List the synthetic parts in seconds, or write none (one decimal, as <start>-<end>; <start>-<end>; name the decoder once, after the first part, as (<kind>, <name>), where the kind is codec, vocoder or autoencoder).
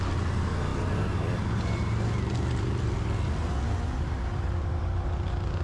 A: none